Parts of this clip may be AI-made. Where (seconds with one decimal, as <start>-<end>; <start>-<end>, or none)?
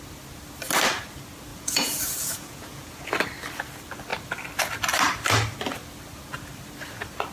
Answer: 1.5-3.1